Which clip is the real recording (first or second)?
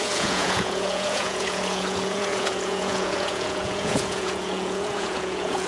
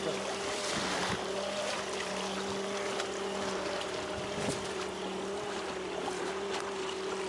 second